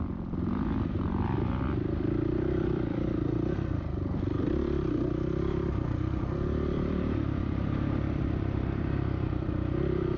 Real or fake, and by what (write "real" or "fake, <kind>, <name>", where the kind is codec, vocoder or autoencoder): fake, vocoder, BigVGAN v2